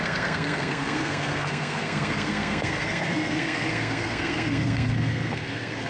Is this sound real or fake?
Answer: fake